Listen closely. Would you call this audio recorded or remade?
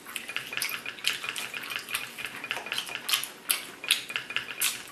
recorded